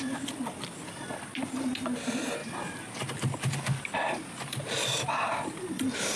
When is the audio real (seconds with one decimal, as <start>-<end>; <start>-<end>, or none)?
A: 0.0-6.2